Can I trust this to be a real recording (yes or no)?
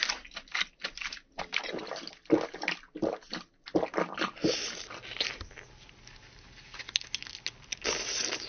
yes